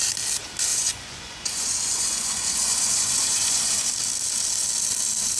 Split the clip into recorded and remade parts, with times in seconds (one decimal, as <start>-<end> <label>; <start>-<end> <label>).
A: 0.0-0.7 recorded; 0.7-3.9 remade; 3.9-5.4 recorded